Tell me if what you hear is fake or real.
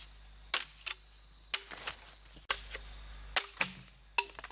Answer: real